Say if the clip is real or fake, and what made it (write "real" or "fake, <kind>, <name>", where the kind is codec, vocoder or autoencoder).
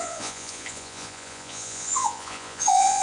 fake, vocoder, Vocos